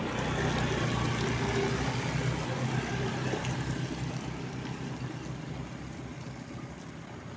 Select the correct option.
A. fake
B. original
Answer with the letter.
B